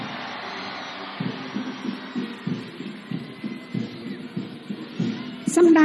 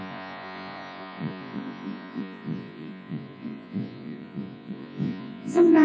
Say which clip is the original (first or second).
first